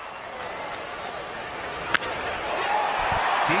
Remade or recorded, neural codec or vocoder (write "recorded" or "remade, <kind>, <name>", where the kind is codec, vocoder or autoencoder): recorded